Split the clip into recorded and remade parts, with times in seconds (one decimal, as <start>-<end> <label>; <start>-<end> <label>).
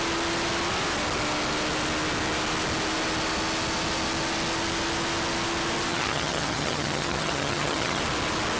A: 0.0-5.9 recorded; 5.9-8.0 remade; 8.0-8.6 recorded